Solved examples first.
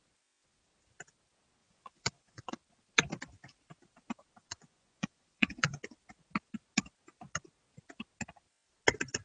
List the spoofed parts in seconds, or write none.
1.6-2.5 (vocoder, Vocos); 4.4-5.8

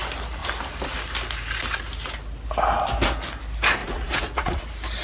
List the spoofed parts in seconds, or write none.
3.8-4.6 (vocoder, Vocos)